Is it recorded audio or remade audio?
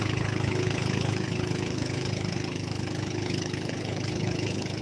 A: remade